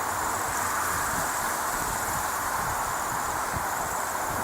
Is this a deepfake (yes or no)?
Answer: yes